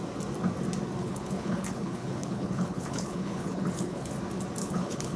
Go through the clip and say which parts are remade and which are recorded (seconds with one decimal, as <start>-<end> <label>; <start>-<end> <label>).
0.0-1.0 recorded; 1.0-4.1 remade; 4.1-4.6 recorded; 4.6-5.2 remade

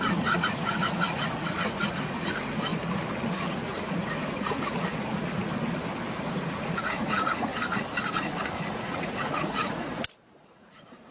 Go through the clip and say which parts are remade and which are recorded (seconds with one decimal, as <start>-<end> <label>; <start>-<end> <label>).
0.0-2.7 remade; 2.7-3.3 recorded; 3.3-5.4 remade; 5.4-6.2 recorded; 6.2-7.5 remade; 7.5-8.7 recorded; 8.7-9.9 remade; 9.9-10.4 recorded; 10.4-11.1 remade

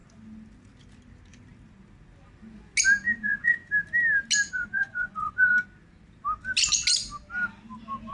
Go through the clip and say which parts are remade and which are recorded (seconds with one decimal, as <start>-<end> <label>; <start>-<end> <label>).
0.0-3.2 recorded; 3.2-3.6 remade; 3.6-4.5 recorded; 4.5-5.5 remade; 5.5-8.1 recorded

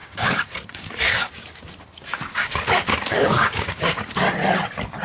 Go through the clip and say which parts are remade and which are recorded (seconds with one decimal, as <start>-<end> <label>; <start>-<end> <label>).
0.0-1.3 remade; 1.3-2.3 recorded; 2.3-4.1 remade; 4.1-5.0 recorded